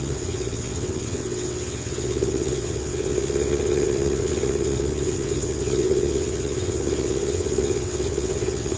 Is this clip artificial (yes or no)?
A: yes